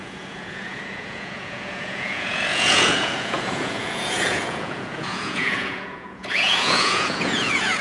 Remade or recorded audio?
remade